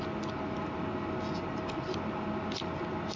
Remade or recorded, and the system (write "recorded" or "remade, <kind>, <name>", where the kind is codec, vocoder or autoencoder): recorded